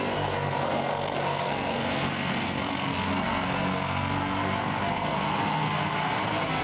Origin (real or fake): fake